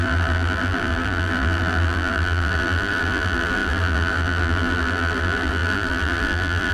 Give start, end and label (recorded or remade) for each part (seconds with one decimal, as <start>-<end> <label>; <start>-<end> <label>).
0.0-6.7 remade